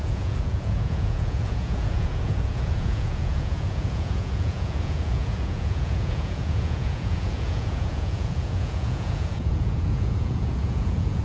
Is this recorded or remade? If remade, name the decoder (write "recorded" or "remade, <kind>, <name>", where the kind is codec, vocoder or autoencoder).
remade, vocoder, Vocos